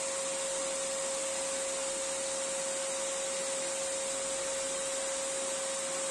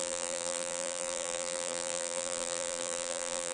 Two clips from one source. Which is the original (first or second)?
first